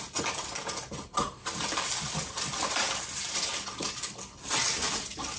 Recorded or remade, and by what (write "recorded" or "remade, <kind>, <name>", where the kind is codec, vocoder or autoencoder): recorded